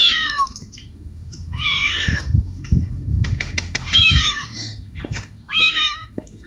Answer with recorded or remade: remade